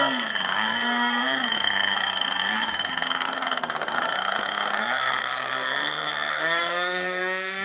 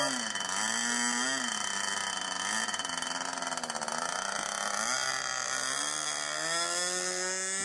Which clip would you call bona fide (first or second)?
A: second